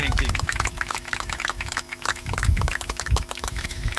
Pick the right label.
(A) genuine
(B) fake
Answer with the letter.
B